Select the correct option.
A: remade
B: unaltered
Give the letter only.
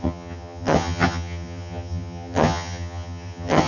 A